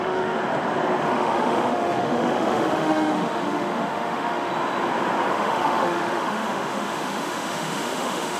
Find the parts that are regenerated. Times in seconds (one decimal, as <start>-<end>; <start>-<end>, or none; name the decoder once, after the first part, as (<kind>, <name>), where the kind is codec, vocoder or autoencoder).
0.0-0.4 (autoencoder, DAC-VAE); 1.0-4.5; 5.3-8.4